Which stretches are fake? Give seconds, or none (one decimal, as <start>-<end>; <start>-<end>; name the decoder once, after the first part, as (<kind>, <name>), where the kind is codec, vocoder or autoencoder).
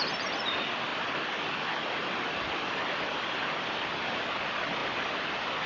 none